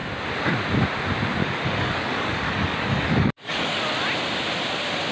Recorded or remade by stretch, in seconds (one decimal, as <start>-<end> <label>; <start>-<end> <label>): 0.0-1.4 recorded; 1.4-3.8 remade; 3.8-5.1 recorded